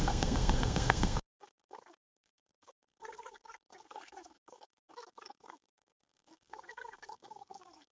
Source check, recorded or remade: remade